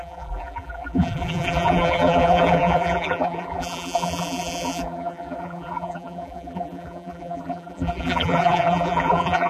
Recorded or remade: remade